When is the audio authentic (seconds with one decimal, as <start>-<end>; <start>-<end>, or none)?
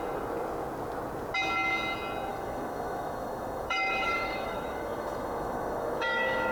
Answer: 0.0-2.3